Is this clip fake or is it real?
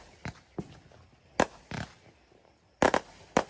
real